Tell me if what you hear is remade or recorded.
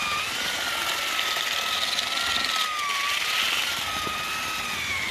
recorded